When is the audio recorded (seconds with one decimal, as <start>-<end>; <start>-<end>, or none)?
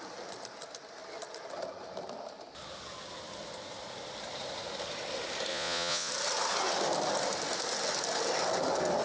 0.0-5.5; 6.1-9.0